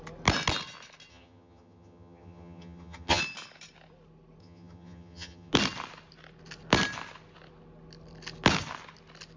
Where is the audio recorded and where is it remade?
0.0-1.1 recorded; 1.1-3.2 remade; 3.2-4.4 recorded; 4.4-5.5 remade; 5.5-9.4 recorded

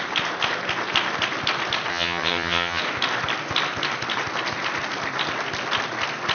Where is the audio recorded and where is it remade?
0.0-1.9 recorded; 1.9-2.8 remade; 2.8-6.3 recorded

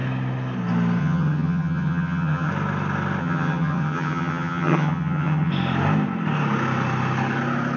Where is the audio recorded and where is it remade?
0.0-1.0 recorded; 1.0-2.5 remade; 2.5-3.2 recorded; 3.2-5.5 remade; 5.5-7.8 recorded